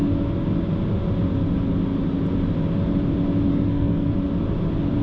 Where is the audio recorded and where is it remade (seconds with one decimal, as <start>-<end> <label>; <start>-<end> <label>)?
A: 0.0-3.5 recorded; 3.5-4.1 remade; 4.1-5.0 recorded